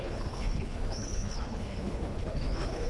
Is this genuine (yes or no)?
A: no